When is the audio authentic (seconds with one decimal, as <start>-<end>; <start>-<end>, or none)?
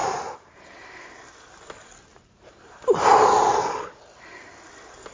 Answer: 1.0-2.1; 3.3-5.1